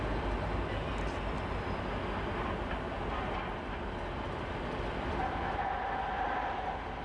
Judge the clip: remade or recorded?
recorded